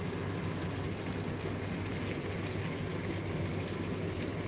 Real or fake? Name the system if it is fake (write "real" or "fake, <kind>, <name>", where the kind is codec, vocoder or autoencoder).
real